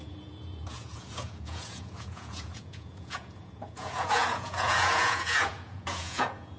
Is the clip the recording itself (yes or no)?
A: no